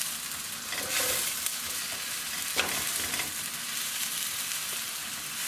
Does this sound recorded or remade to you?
recorded